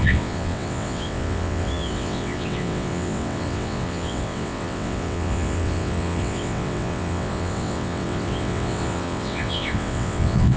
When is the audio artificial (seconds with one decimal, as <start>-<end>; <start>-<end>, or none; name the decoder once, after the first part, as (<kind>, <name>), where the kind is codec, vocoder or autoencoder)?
0.0-10.6 (vocoder, WaveNeXt)